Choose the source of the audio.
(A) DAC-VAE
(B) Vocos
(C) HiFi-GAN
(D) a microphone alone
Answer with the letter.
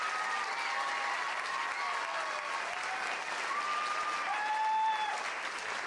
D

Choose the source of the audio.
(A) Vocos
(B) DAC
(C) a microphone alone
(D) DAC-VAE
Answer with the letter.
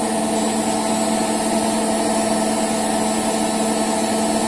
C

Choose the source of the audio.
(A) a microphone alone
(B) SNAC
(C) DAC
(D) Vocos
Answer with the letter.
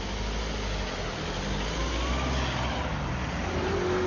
A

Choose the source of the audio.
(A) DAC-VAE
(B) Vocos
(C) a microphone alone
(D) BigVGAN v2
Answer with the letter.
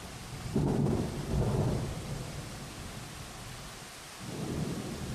C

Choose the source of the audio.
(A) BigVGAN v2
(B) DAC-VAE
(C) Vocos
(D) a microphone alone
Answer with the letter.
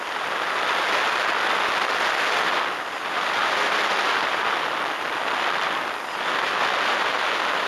D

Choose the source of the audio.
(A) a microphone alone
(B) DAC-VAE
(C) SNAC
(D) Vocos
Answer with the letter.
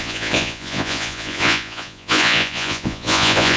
D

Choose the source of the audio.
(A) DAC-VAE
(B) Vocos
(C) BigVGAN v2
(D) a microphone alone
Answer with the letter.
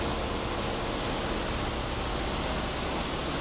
D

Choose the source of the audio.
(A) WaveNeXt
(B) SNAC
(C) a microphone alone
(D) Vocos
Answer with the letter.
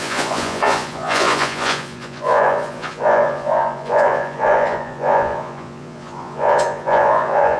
D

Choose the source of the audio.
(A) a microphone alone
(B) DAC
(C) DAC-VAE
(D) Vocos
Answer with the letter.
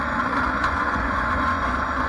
D